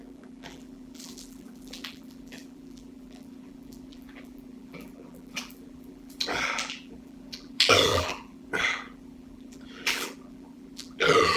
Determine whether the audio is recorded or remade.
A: remade